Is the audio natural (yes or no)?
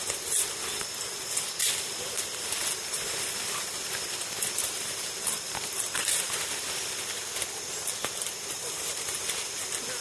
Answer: yes